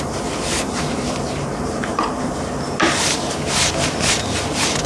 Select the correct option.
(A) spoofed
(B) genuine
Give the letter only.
A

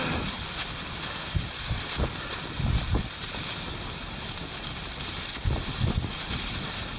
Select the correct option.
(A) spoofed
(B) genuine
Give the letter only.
B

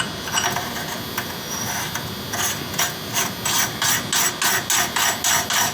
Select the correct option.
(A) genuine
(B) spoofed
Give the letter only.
A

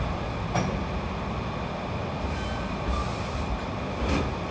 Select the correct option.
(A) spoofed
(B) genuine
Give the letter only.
B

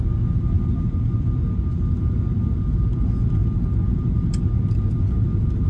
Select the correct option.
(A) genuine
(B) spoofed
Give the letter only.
A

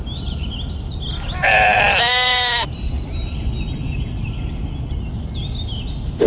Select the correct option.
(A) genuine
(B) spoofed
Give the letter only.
A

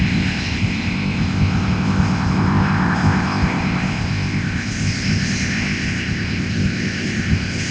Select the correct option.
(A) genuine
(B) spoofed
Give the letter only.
B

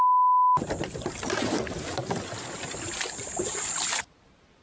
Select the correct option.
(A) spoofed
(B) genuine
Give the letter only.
B